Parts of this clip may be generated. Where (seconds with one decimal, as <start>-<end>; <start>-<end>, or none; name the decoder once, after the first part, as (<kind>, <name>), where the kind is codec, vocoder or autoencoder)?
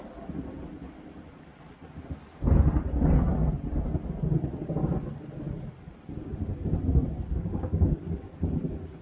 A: 7.3-8.0 (codec, DAC)